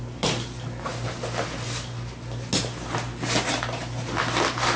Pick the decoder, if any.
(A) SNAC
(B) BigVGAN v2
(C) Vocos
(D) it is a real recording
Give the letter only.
D